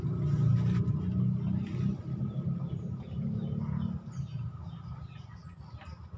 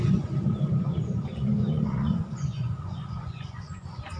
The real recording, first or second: first